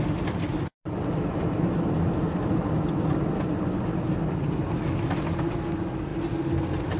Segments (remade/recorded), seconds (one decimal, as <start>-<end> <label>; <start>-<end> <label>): 0.0-7.0 recorded